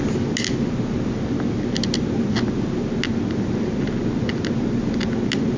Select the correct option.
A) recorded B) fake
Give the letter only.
A